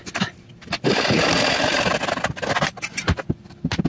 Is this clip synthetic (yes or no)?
no